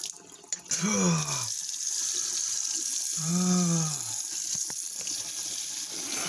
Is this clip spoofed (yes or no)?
no